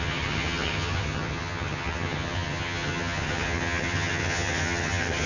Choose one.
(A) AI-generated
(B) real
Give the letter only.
A